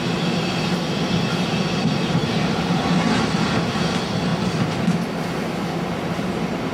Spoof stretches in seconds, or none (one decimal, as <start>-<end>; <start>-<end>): 2.2-3.8